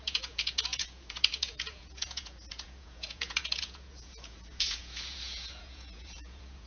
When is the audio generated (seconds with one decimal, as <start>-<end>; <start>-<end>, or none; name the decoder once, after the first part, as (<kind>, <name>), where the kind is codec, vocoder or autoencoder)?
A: 0.0-6.7 (vocoder, Vocos)